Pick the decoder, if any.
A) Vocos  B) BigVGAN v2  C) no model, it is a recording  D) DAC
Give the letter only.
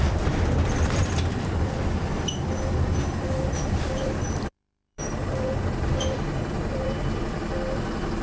B